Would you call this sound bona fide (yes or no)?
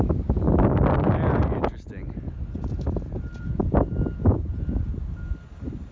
yes